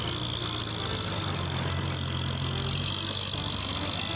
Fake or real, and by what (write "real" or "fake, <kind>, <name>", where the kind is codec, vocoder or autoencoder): real